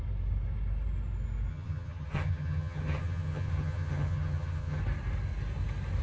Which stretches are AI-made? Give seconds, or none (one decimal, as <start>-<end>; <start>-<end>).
1.5-4.8

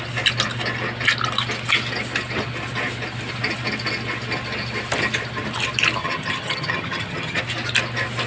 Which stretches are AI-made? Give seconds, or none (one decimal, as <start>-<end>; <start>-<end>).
6.0-7.4

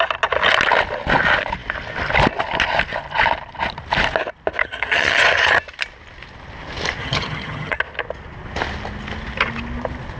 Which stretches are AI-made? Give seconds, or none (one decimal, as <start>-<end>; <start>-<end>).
4.6-5.2; 7.0-7.8

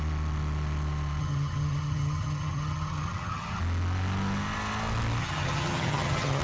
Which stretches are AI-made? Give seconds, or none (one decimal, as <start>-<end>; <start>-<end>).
1.2-3.6; 5.2-6.4

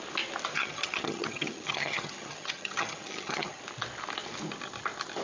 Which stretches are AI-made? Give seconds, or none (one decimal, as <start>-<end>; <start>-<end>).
0.5-3.6

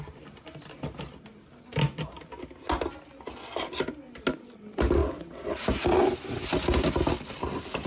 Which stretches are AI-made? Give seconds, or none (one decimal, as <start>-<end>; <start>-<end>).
none